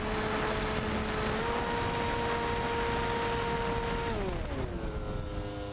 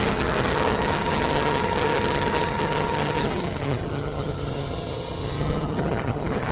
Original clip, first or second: first